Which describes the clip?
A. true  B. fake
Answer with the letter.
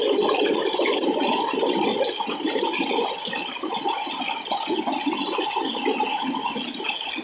A